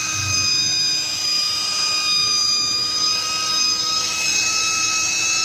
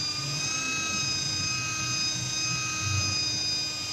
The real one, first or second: second